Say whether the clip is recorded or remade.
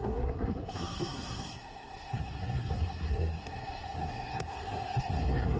remade